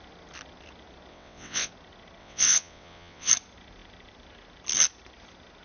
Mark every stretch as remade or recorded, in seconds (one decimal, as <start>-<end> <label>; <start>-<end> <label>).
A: 0.0-1.1 recorded; 1.1-1.7 remade; 1.7-2.2 recorded; 2.2-3.3 remade; 3.3-5.6 recorded